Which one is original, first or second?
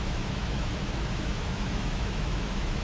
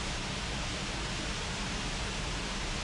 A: second